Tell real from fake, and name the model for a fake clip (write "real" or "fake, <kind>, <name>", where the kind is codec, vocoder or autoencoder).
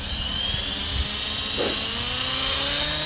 real